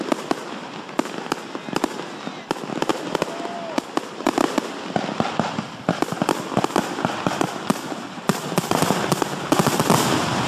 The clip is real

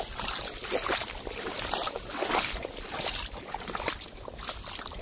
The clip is real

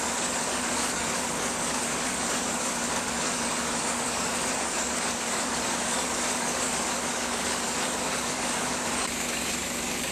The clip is fake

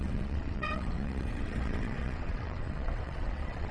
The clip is fake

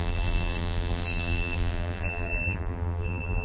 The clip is fake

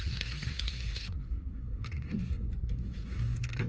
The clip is fake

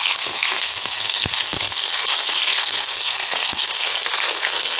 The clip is fake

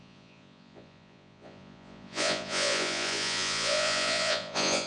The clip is fake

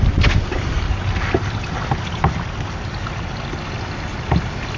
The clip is real